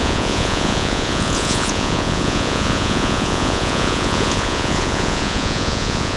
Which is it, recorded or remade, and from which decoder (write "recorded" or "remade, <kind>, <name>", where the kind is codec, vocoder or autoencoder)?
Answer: remade, vocoder, Vocos